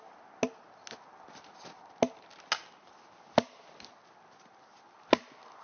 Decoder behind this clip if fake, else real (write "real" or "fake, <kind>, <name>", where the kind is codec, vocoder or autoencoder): real